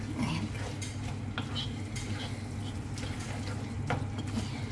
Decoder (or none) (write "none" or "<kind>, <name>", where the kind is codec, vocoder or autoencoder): none